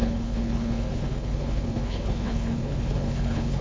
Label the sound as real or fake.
fake